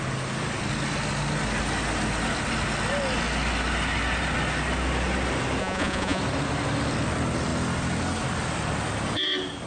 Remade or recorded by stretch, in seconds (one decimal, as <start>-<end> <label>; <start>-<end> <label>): 0.0-5.6 recorded; 5.6-6.2 remade; 6.2-9.7 recorded